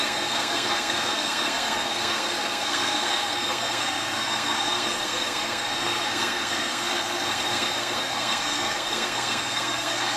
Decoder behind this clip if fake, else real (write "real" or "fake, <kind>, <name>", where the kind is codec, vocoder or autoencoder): fake, codec, SNAC